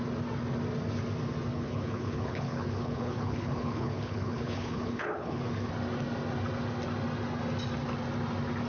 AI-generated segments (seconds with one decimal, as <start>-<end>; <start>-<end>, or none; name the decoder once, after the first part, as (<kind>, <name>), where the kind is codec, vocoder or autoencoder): 1.5-5.4 (codec, HILCodec)